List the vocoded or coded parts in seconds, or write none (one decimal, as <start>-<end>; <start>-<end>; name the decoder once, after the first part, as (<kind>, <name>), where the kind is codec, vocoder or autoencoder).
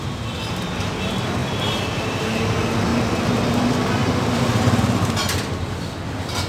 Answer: 1.4-2.2 (vocoder, BigVGAN v2); 2.9-3.6; 4.0-4.8